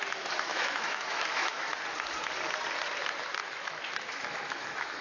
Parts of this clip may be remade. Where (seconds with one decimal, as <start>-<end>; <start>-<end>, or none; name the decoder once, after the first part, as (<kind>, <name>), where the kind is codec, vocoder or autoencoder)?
0.5-1.7 (autoencoder, DAC-VAE); 3.4-5.0